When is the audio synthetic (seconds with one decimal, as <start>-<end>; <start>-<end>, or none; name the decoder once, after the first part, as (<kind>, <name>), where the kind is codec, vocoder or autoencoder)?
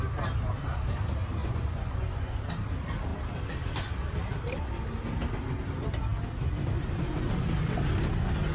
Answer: 1.4-2.4 (vocoder, Vocos)